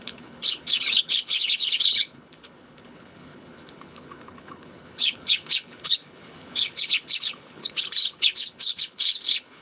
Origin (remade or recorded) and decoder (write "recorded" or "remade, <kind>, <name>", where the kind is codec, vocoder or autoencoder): remade, codec, HILCodec